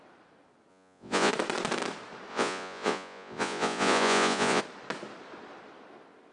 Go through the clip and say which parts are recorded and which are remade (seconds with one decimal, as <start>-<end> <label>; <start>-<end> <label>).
0.0-0.7 recorded; 0.7-1.3 remade; 1.3-2.3 recorded; 2.3-4.6 remade; 4.6-6.3 recorded